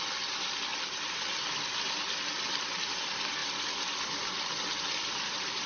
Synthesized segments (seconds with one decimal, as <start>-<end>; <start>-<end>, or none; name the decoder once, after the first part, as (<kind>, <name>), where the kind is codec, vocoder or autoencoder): none

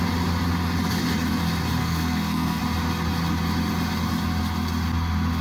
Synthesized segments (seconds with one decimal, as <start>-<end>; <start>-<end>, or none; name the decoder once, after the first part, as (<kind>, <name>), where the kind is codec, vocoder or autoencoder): 1.8-2.6 (codec, SNAC)

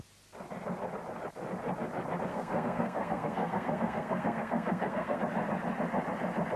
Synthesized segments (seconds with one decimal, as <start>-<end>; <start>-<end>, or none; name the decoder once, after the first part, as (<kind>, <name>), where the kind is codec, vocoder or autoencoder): 2.3-5.2 (codec, SNAC)

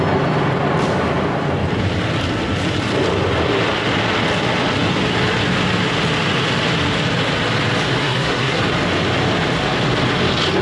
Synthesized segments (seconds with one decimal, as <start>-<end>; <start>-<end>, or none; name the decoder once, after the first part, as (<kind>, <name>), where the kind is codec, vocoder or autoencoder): 8.0-8.6 (codec, SNAC)

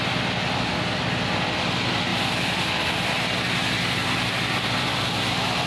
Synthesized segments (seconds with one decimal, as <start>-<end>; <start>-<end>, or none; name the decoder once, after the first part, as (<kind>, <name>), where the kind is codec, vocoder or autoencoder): none

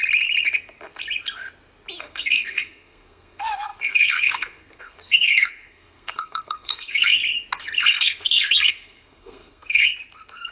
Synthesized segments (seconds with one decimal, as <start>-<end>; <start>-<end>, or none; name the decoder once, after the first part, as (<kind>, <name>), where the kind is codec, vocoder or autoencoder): 2.0-7.2 (codec, SNAC); 7.9-9.9

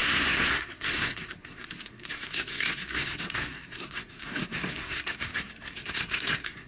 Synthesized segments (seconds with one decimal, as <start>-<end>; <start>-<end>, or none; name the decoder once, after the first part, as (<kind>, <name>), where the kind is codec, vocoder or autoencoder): 0.0-6.7 (codec, SNAC)

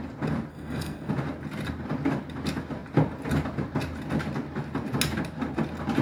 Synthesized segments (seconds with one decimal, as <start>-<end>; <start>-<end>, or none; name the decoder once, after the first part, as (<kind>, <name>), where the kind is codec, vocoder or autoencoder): 0.5-1.1 (codec, SNAC)